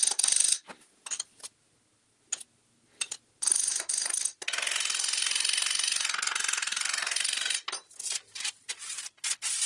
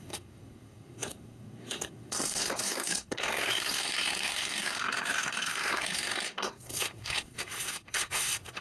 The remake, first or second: second